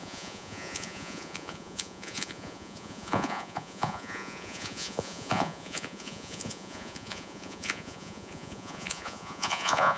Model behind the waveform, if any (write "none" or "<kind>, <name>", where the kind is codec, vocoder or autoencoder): vocoder, Vocos